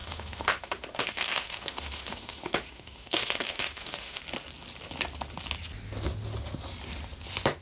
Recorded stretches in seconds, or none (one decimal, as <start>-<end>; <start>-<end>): 4.2-7.6